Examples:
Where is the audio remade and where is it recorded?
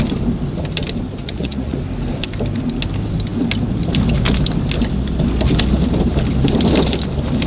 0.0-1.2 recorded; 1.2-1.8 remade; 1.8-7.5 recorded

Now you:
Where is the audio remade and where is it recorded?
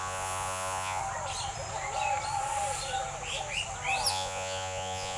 0.0-1.0 remade; 1.0-4.1 recorded; 4.1-5.2 remade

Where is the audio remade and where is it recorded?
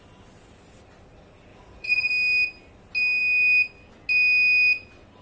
0.0-1.5 recorded; 1.5-2.1 remade; 2.1-5.2 recorded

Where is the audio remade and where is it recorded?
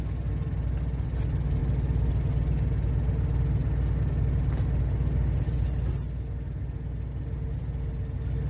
0.0-8.5 recorded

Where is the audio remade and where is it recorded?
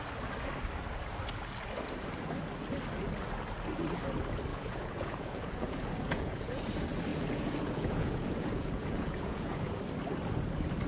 0.0-4.5 recorded; 4.5-6.6 remade; 6.6-7.1 recorded; 7.1-9.8 remade; 9.8-10.9 recorded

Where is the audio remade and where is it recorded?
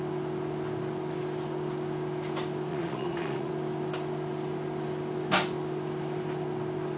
0.0-2.7 recorded; 2.7-3.5 remade; 3.5-7.0 recorded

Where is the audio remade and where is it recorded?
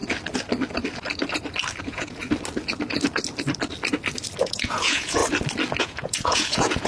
0.0-1.8 recorded; 1.8-2.2 remade; 2.2-4.4 recorded; 4.4-5.2 remade; 5.2-5.8 recorded; 5.8-6.9 remade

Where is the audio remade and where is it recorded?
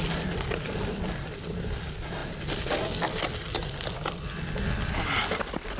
0.0-5.8 recorded